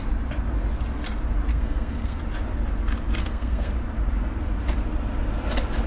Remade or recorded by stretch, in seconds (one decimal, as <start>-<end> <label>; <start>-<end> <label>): 0.0-1.5 recorded; 1.5-2.2 remade; 2.2-3.2 recorded; 3.2-3.7 remade; 3.7-5.9 recorded